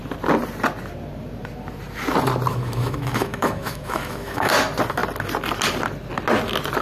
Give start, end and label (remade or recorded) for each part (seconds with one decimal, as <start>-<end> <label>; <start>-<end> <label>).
0.0-2.5 recorded; 2.5-4.5 remade; 4.5-6.8 recorded